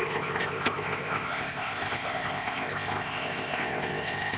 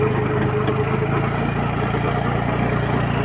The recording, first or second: second